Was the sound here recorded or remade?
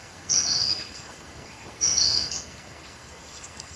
remade